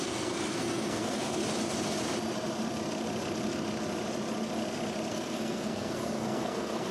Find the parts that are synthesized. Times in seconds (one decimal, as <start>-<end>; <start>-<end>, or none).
0.0-1.4; 5.1-6.9